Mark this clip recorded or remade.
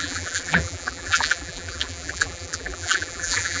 remade